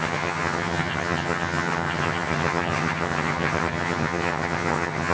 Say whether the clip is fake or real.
fake